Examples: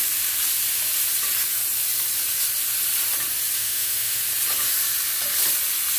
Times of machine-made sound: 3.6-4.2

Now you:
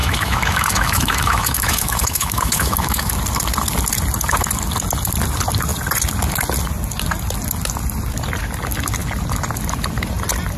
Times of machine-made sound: 0.0-3.1

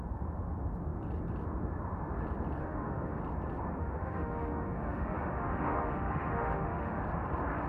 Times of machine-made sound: 2.6-3.2; 3.8-7.0

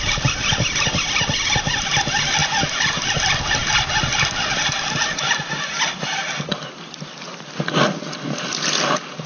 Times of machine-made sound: none

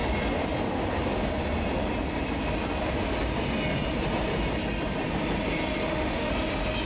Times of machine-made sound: 5.8-6.3

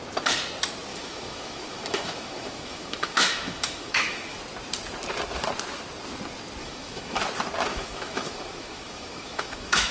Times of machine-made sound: 0.9-4.4; 6.6-7.2; 7.7-9.9

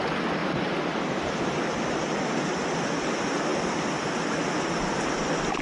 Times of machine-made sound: none